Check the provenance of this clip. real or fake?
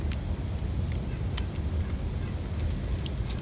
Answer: real